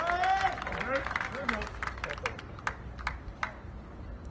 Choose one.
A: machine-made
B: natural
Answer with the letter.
B